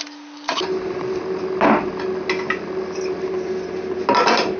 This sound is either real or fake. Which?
real